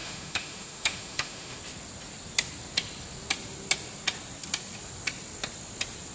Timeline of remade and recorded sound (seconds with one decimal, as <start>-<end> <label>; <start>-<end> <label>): 0.0-1.6 remade; 1.6-6.1 recorded